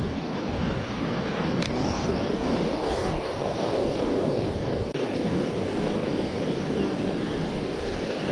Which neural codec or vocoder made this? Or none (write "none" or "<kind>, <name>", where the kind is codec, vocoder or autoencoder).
codec, DAC